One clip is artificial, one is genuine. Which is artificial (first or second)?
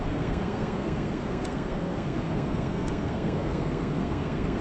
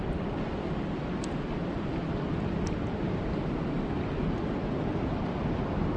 first